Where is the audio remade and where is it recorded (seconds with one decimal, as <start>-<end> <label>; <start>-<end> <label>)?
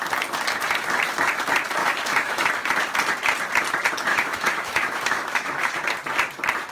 0.0-1.8 recorded; 1.8-2.5 remade; 2.5-4.1 recorded; 4.1-5.7 remade; 5.7-6.7 recorded